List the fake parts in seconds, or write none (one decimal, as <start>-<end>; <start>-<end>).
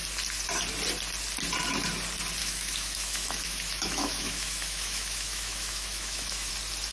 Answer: 2.4-6.5